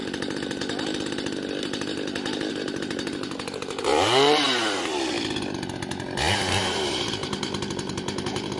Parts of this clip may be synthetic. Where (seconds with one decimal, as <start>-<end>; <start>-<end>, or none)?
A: 2.5-3.9; 6.6-8.6